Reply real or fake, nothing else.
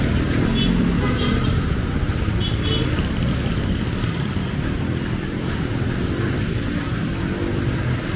real